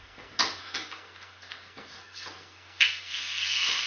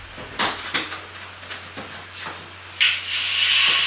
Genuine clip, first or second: second